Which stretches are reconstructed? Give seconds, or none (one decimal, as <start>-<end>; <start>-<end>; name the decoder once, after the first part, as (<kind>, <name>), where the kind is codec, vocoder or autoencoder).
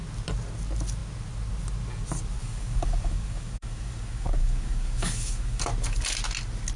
2.4-5.7 (codec, DAC)